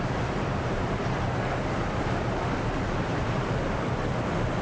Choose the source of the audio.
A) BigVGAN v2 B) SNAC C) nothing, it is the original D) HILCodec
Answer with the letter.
A